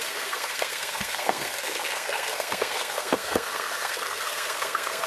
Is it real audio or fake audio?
fake